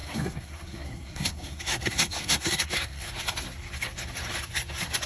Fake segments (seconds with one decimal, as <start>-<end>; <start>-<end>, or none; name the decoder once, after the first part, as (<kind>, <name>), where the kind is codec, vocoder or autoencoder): 0.0-3.1 (codec, SNAC)